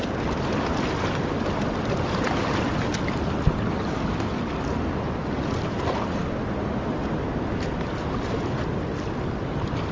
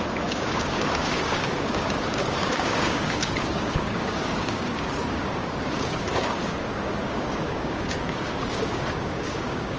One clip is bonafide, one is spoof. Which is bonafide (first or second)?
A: first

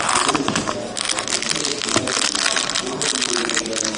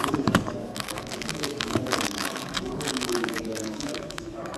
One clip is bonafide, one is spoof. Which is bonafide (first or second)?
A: first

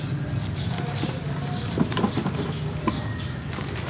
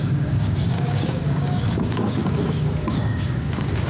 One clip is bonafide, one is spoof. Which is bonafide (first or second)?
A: first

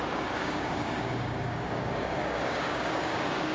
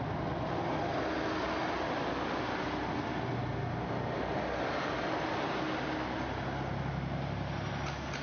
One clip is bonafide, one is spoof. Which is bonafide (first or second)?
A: second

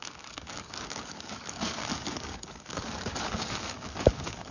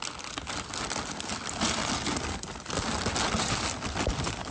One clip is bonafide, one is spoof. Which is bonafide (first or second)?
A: second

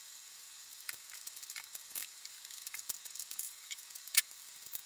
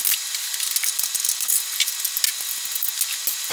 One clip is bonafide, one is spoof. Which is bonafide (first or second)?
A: second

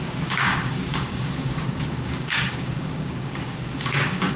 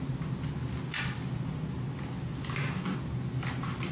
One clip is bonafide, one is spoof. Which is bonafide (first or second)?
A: second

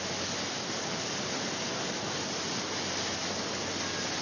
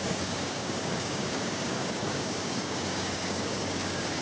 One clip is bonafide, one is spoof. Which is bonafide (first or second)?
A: first